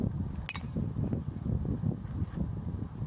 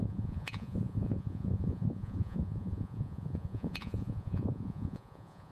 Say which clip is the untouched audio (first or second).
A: first